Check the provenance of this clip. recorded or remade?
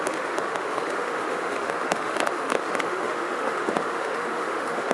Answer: remade